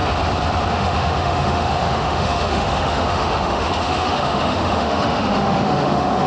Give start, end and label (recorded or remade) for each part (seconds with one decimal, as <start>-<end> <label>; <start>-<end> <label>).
0.0-0.7 recorded; 0.7-6.3 remade